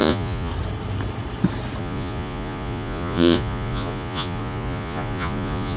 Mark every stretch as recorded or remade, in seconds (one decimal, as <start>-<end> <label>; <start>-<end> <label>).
0.0-0.5 remade; 0.5-1.8 recorded; 1.8-5.8 remade